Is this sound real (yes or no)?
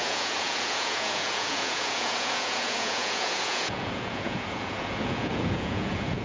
no